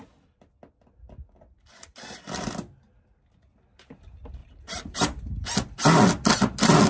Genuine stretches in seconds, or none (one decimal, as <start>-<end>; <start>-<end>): 0.0-4.4; 5.2-6.9